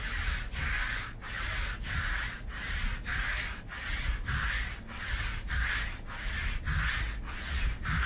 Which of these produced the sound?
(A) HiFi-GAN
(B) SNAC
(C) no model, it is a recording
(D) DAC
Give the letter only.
C